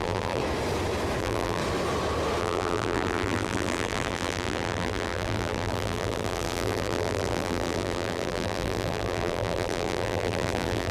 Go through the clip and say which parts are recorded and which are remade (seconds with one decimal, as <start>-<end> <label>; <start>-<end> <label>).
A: 0.0-0.4 remade; 0.4-1.2 recorded; 1.2-1.6 remade; 1.6-2.4 recorded; 2.4-10.9 remade